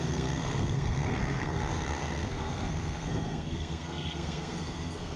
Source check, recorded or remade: remade